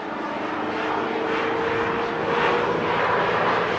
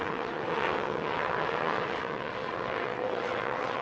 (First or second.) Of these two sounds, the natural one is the first